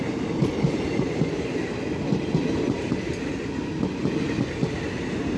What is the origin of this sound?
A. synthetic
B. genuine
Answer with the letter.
B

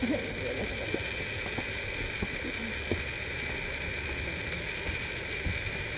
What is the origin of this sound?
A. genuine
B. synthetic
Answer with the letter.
A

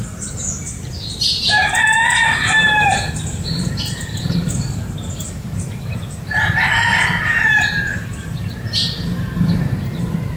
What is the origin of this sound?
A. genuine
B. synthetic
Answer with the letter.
B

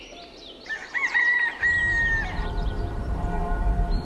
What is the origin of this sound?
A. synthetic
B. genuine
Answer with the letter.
A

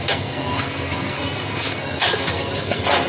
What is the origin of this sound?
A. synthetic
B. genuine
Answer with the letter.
A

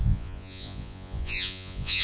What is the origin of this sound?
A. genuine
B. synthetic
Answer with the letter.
B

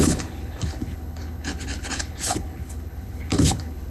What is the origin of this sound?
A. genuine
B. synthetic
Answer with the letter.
B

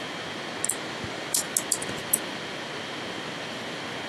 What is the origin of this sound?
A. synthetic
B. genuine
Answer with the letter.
B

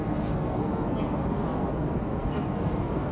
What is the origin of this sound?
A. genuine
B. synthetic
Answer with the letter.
B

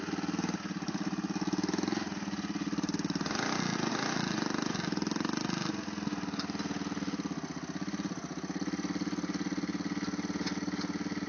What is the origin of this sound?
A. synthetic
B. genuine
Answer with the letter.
B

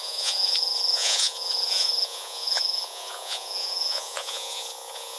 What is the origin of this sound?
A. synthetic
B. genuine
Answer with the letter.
A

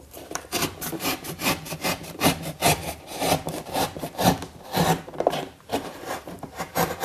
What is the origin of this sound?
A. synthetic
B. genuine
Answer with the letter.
A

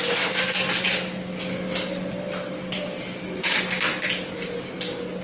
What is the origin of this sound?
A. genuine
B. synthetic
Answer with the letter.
A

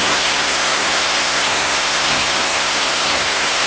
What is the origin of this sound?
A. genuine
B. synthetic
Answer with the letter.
B